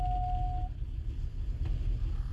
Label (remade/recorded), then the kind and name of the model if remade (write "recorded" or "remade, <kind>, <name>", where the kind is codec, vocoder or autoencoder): recorded